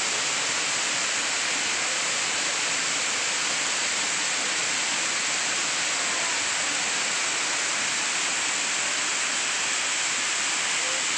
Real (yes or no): yes